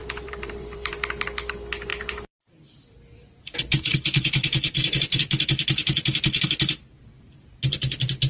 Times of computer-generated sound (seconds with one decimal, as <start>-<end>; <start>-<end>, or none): 0.0-0.9; 1.9-5.2; 7.1-8.3